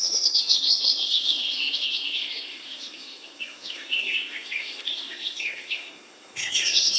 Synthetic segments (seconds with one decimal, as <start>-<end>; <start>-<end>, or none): 0.0-7.0